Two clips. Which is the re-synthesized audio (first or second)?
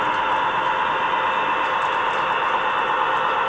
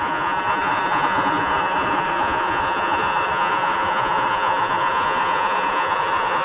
second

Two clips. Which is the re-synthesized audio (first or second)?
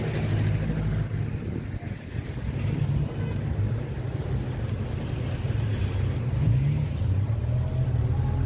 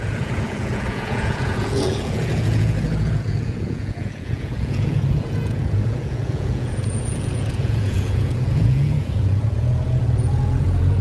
second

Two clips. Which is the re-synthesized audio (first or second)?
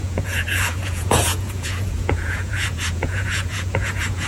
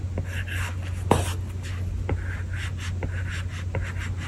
first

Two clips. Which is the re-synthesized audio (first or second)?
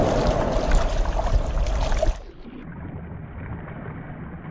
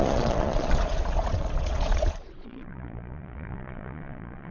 second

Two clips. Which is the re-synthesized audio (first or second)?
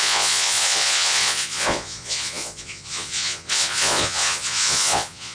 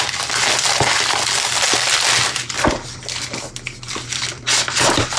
first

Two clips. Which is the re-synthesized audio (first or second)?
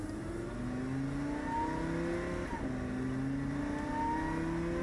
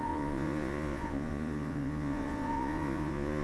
second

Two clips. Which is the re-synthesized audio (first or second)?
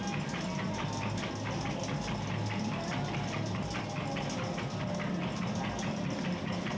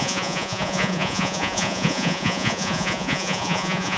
second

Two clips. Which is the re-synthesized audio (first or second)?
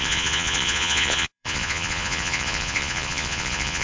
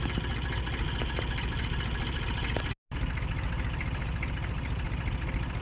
first